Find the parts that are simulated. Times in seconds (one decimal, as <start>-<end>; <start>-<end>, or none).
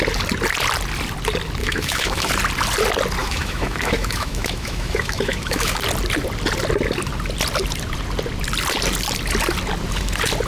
1.6-2.3; 3.2-5.8